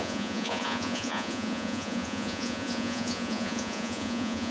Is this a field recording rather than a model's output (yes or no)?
no